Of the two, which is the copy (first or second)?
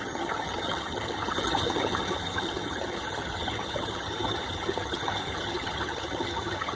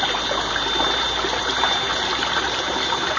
first